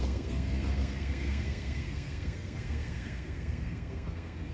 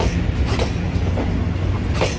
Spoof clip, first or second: first